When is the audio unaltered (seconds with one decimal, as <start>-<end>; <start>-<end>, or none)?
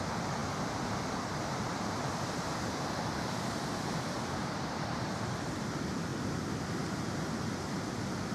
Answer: none